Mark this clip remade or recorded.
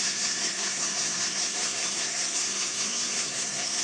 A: remade